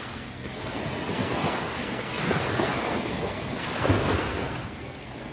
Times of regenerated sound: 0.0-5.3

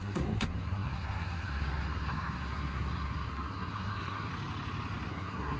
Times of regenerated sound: 0.0-4.3; 5.1-5.6

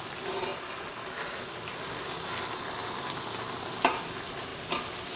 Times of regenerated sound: none